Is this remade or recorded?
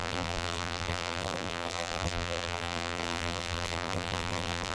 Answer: remade